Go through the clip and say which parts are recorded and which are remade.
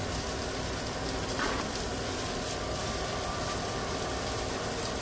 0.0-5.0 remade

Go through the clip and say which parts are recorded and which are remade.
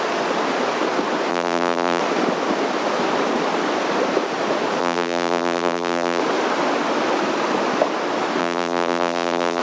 0.0-1.3 recorded; 1.3-2.0 remade; 2.0-4.8 recorded; 4.8-6.2 remade; 6.2-8.4 recorded; 8.4-9.6 remade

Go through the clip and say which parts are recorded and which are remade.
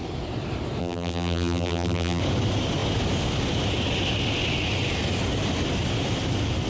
0.0-0.8 recorded; 0.8-2.2 remade; 2.2-6.7 recorded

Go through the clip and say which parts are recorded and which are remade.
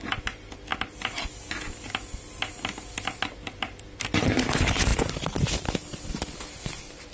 0.0-7.1 recorded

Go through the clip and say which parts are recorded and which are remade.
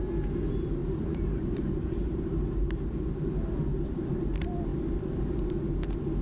0.0-0.8 recorded; 0.8-2.8 remade; 2.8-3.7 recorded; 3.7-4.3 remade; 4.3-6.2 recorded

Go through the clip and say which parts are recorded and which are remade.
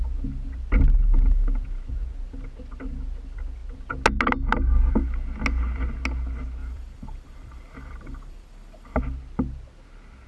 0.0-6.6 recorded; 6.6-9.0 remade; 9.0-10.3 recorded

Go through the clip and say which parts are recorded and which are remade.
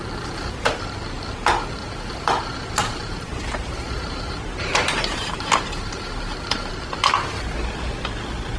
0.0-1.8 recorded; 1.8-6.7 remade; 6.7-8.6 recorded